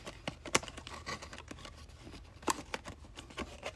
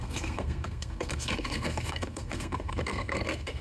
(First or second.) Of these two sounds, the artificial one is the second